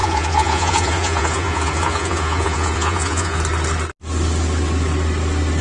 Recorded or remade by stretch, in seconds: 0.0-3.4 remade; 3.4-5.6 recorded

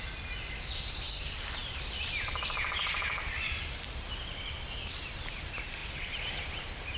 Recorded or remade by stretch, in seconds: 0.0-7.0 recorded